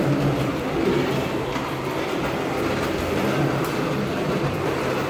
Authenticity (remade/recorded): recorded